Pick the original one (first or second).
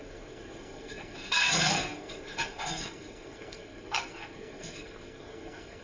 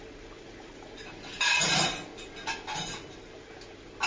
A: second